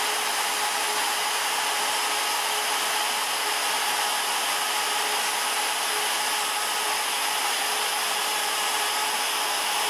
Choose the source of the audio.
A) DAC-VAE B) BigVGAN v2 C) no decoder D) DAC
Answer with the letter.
C